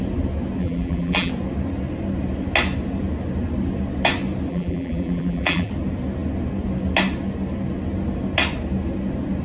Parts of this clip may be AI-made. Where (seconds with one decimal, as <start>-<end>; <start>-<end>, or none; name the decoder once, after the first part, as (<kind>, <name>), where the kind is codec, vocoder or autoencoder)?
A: 0.6-1.3 (vocoder, BigVGAN v2); 4.5-5.7